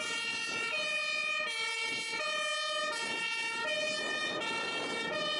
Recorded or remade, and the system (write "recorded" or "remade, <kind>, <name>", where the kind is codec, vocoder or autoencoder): recorded